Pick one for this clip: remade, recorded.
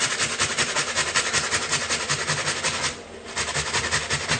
recorded